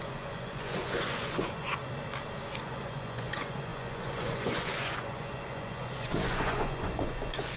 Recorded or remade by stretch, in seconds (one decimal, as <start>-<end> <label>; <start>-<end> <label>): 0.0-1.7 remade; 1.7-2.6 recorded; 2.6-7.6 remade

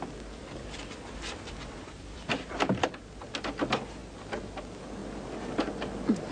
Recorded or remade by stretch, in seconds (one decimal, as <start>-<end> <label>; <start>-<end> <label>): 0.0-0.4 recorded; 0.4-3.2 remade; 3.2-6.3 recorded

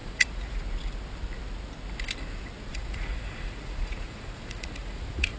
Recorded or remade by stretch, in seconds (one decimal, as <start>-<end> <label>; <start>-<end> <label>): 0.0-0.6 remade; 0.6-2.7 recorded; 2.7-5.4 remade

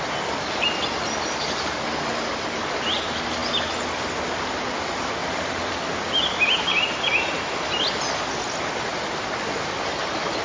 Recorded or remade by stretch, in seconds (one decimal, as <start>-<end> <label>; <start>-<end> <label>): 0.0-10.4 recorded

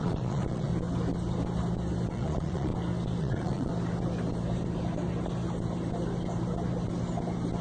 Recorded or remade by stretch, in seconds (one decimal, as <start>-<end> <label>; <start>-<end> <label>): 0.0-0.7 remade; 0.7-2.1 recorded; 2.1-2.7 remade; 2.7-3.2 recorded; 3.2-3.7 remade; 3.7-7.6 recorded

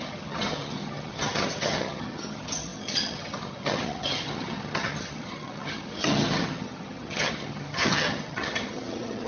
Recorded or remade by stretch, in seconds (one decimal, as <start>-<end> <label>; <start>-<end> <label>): 0.0-9.3 remade

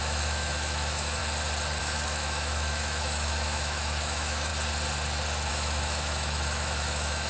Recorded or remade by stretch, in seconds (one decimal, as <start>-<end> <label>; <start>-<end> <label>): 0.0-1.2 remade; 1.2-1.8 recorded; 1.8-4.5 remade; 4.5-5.5 recorded; 5.5-7.3 remade

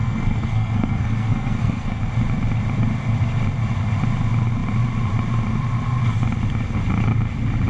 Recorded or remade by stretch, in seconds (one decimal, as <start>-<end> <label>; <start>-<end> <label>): 0.0-2.0 remade; 2.0-7.7 recorded